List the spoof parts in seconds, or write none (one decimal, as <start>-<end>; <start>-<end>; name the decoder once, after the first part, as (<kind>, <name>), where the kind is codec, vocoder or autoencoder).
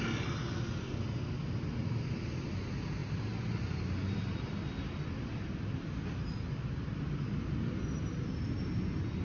none